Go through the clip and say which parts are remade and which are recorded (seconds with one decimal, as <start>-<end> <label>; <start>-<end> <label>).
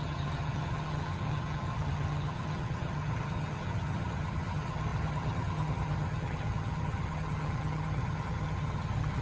0.0-9.2 remade